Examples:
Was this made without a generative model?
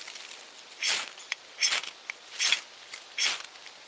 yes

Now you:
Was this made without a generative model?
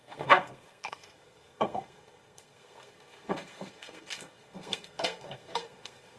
no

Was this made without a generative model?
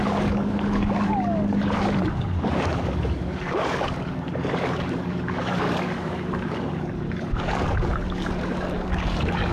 no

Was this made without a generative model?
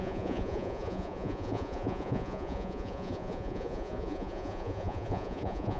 no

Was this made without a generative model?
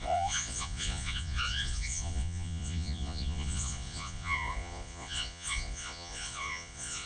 no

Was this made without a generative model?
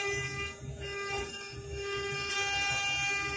yes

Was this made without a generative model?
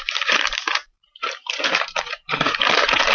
no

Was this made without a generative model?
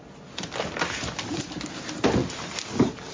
yes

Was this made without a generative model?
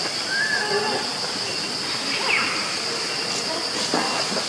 yes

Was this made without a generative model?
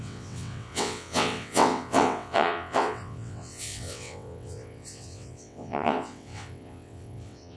no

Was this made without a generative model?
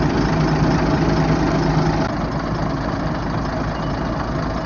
yes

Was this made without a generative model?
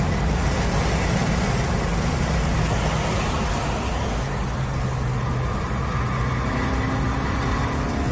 yes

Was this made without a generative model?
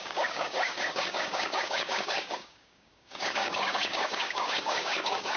no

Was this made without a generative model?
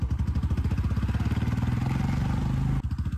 yes